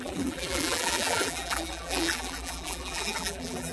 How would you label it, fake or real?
fake